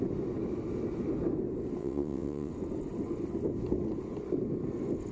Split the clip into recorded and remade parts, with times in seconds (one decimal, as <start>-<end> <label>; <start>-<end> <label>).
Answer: 0.0-1.8 recorded; 1.8-2.5 remade; 2.5-5.1 recorded